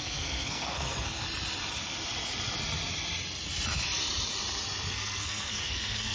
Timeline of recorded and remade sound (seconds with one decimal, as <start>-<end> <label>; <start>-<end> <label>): 0.0-1.2 remade; 1.2-4.9 recorded; 4.9-6.1 remade